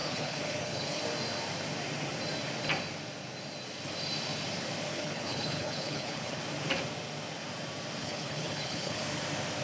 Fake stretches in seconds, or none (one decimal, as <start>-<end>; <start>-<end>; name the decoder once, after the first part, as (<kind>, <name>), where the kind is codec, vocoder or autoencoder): 0.0-1.0 (codec, HILCodec); 4.9-6.4; 8.0-9.0